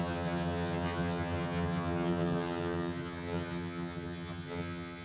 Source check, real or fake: fake